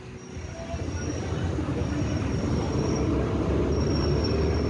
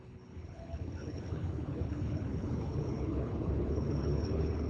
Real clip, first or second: first